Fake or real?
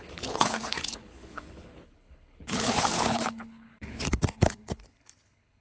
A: fake